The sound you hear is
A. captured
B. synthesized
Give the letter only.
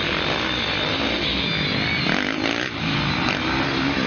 A